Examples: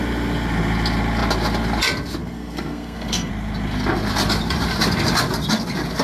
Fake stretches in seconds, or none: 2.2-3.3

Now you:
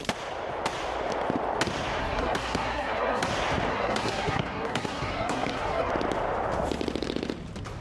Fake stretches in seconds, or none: 2.0-3.3; 3.7-5.9

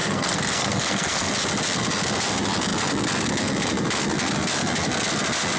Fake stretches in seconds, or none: 0.0-1.3

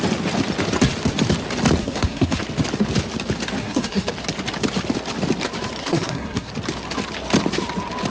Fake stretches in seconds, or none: 1.8-2.4; 3.6-4.1; 5.8-6.5

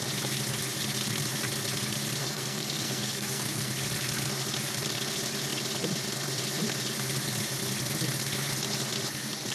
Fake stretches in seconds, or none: 2.2-3.7

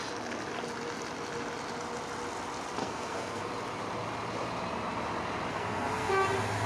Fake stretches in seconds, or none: 2.8-3.5; 5.5-6.1